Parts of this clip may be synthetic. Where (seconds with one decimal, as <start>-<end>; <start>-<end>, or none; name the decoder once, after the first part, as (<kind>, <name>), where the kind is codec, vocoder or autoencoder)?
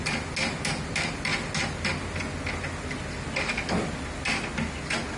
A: none